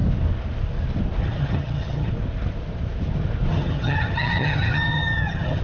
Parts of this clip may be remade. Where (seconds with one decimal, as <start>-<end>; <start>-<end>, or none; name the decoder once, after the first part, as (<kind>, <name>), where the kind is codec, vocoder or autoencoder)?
1.2-2.1 (vocoder, HiFi-GAN); 3.5-5.6